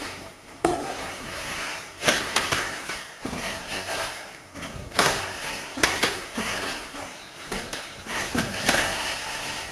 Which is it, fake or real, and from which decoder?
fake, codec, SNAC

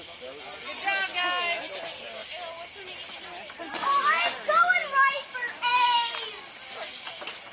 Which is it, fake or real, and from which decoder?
real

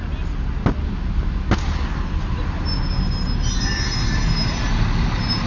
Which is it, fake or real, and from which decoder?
real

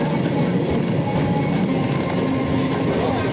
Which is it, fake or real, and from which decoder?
real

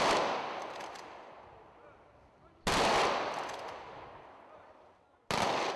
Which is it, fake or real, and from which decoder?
real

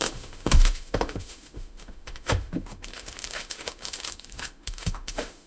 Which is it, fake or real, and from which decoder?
fake, autoencoder, DAC-VAE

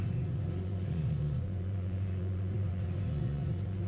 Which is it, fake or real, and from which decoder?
fake, vocoder, Vocos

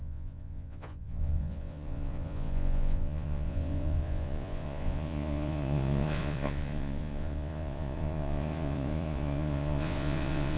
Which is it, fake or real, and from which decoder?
fake, vocoder, Vocos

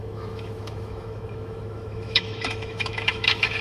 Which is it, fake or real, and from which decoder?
fake, autoencoder, DAC-VAE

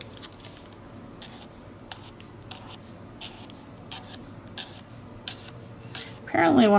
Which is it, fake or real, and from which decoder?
real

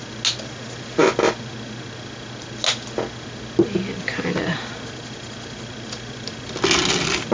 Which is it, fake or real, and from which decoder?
real